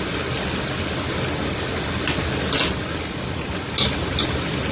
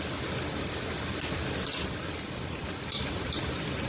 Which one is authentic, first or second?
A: first